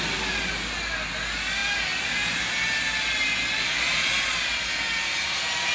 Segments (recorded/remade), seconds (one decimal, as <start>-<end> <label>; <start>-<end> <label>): 0.0-5.7 recorded